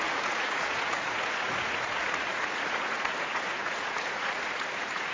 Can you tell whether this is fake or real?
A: fake